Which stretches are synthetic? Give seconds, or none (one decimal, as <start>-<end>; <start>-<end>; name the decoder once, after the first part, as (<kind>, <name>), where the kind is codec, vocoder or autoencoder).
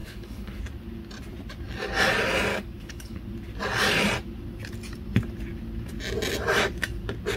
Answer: 0.0-0.6 (codec, DAC); 2.5-3.2